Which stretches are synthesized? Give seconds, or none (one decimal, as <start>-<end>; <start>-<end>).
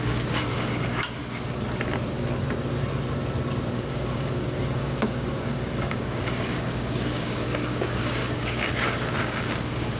0.0-1.2; 3.6-10.0